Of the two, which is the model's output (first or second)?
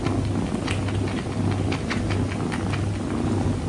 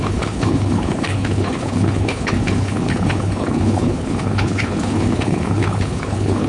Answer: second